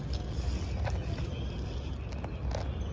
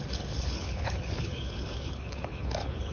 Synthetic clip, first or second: second